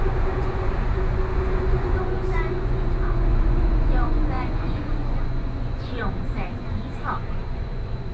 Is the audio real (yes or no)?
no